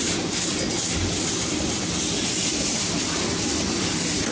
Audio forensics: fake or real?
real